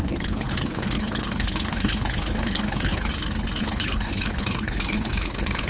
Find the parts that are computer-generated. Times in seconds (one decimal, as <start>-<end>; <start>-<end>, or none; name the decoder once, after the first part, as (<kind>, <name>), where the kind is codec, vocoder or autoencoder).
0.0-3.1 (codec, HILCodec); 3.6-5.7